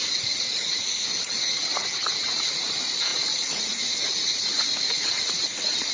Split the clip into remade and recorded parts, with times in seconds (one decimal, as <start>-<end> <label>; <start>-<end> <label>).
0.0-0.5 recorded; 0.5-1.2 remade; 1.2-1.7 recorded; 1.7-2.7 remade; 2.7-3.1 recorded; 3.1-5.9 remade